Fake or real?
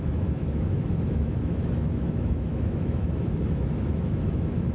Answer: fake